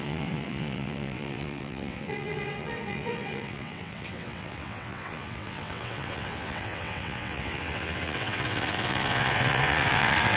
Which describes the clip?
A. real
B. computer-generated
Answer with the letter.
B